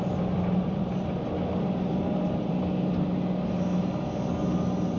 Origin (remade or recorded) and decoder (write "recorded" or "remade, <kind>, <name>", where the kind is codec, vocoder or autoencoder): recorded